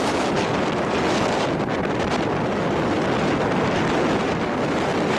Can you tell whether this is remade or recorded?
recorded